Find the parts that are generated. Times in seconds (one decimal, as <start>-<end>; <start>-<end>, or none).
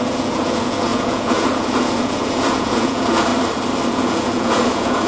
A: 0.0-3.3; 3.9-5.1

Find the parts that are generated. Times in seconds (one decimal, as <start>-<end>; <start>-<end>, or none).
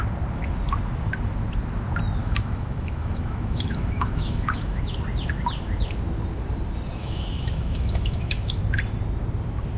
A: 2.2-4.9; 7.0-8.6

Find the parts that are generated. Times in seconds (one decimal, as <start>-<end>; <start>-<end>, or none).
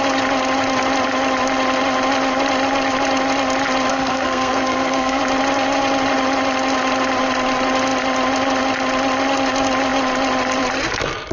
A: 3.9-5.2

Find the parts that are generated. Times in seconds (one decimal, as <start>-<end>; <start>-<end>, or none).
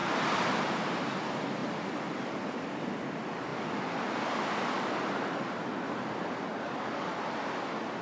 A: 6.5-7.2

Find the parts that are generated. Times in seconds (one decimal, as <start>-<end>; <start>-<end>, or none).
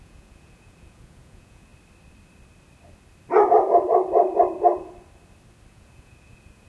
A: 0.0-1.7; 5.7-6.7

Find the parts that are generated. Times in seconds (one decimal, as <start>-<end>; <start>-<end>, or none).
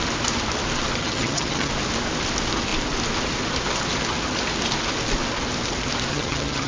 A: 1.0-1.7; 6.1-6.7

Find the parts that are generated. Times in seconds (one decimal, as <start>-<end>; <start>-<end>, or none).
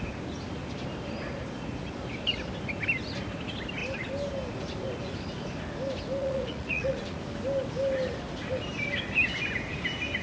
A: 6.2-7.2